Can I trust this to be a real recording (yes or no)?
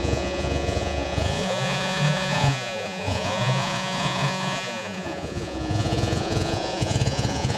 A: no